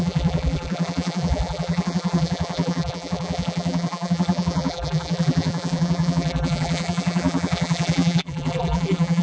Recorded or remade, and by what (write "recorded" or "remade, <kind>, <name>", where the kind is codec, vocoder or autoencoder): remade, vocoder, BigVGAN v2